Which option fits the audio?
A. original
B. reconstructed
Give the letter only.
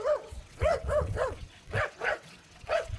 B